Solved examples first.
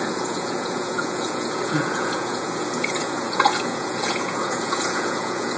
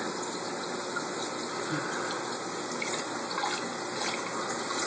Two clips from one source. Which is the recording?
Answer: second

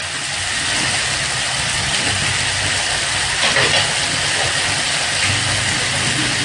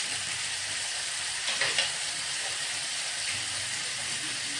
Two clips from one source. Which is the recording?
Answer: first